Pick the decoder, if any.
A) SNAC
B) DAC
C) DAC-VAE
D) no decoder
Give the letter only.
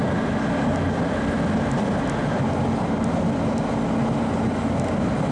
D